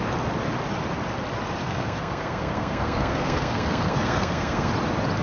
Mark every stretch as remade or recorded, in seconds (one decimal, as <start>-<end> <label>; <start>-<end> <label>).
0.0-1.6 recorded; 1.6-4.7 remade; 4.7-5.2 recorded